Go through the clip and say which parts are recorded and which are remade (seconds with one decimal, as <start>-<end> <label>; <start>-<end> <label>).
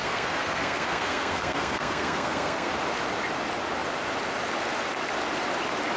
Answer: 0.0-2.7 remade; 2.7-6.0 recorded